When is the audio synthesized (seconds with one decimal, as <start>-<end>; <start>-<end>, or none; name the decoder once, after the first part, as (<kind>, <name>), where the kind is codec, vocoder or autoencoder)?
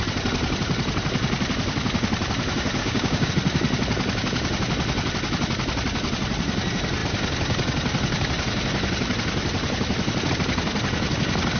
2.8-3.3 (codec, DAC)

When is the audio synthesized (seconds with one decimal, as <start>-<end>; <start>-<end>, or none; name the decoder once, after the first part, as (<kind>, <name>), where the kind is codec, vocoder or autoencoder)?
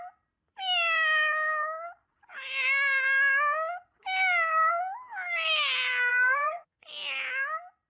6.1-6.8 (codec, SNAC)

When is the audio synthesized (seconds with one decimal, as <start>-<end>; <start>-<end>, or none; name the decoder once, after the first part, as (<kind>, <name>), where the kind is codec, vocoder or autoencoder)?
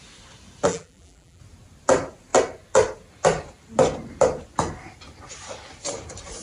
0.7-1.4 (vocoder, BigVGAN v2)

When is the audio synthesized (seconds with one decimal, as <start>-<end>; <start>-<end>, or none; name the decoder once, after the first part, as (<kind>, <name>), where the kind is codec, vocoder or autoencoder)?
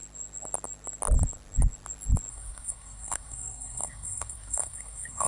2.3-5.3 (codec, SNAC)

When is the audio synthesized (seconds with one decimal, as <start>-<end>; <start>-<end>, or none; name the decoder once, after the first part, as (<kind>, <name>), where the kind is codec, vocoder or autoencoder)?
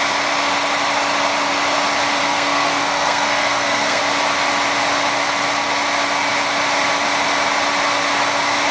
2.2-4.0 (codec, SNAC)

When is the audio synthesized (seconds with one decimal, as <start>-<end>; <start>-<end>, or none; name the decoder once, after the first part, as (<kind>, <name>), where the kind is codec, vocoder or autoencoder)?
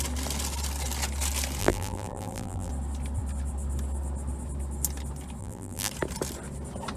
1.6-2.7 (vocoder, BigVGAN v2); 5.4-5.9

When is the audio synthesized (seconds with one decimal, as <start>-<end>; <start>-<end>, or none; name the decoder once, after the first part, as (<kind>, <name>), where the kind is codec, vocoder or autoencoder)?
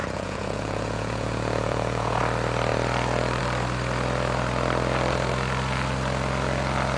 0.0-2.2 (vocoder, Vocos)